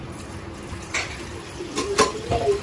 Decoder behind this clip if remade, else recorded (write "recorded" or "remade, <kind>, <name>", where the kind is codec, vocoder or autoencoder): recorded